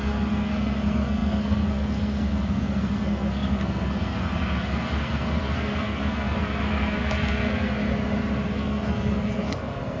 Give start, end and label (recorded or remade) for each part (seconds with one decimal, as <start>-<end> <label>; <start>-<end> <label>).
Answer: 0.0-7.8 remade; 7.8-8.5 recorded; 8.5-10.0 remade